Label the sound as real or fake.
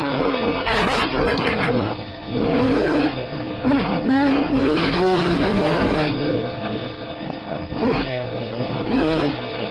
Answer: fake